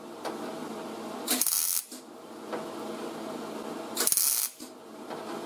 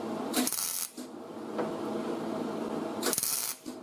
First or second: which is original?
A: first